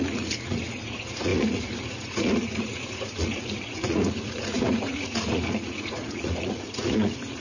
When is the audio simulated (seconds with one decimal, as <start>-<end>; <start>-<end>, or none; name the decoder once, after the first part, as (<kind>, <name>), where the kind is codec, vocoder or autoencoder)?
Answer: 0.0-7.4 (vocoder, Vocos)